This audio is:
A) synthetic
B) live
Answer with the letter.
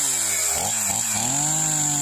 B